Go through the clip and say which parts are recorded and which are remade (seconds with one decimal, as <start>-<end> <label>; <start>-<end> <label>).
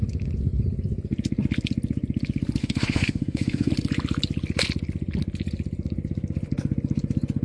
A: 0.0-2.6 recorded; 2.6-3.7 remade; 3.7-7.4 recorded